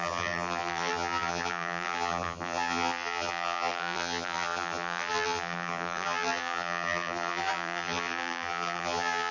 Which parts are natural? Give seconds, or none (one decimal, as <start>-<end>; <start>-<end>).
none